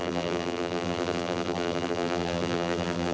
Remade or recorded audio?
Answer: remade